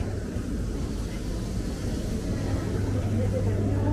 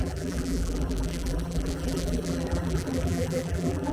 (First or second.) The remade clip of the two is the second